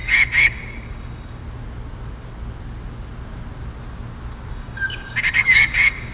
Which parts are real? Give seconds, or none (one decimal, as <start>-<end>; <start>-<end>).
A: 1.4-4.5